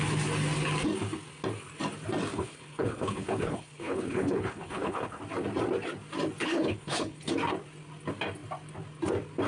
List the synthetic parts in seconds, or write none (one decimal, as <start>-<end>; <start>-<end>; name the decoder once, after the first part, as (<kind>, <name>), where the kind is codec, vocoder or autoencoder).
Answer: 2.3-5.2 (codec, HILCodec); 6.4-7.3